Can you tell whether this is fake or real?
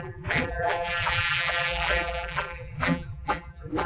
fake